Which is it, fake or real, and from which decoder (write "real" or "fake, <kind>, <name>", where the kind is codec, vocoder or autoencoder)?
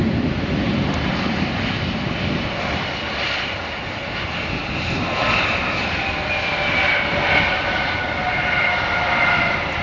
real